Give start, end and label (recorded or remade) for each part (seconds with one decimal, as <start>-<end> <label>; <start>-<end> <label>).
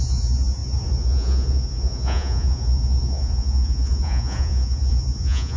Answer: 0.0-5.6 remade